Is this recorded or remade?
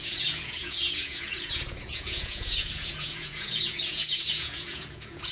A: remade